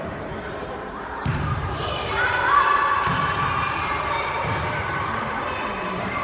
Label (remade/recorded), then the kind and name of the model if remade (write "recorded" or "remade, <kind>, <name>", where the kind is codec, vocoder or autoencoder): remade, vocoder, BigVGAN v2